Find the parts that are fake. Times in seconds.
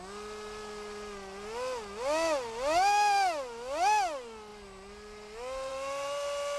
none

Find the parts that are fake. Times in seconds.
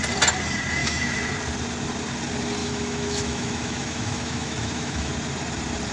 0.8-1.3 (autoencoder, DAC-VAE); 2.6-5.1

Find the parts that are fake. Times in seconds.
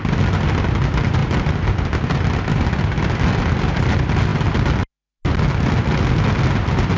1.2-3.4 (vocoder, BigVGAN v2)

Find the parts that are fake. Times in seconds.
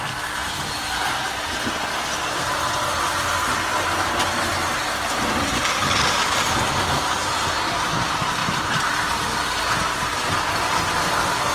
8.4-9.0 (vocoder, BigVGAN v2)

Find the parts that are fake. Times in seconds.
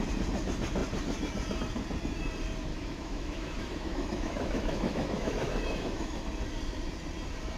2.7-6.2 (autoencoder, DAC-VAE)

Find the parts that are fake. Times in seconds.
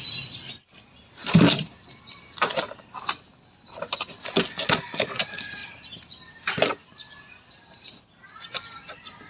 1.2-2.3 (vocoder, BigVGAN v2); 5.6-8.0